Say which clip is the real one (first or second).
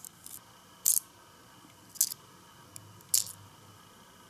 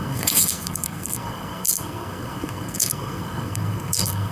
first